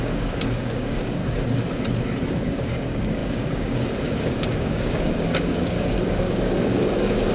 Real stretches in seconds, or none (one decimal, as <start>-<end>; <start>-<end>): 1.2-2.3